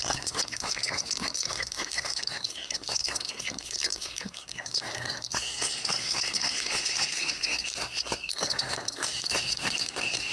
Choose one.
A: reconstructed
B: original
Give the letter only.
A